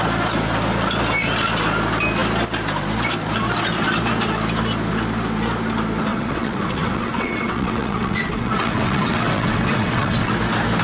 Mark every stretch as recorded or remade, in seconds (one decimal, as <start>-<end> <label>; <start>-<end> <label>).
0.0-6.1 recorded; 6.1-10.3 remade; 10.3-10.8 recorded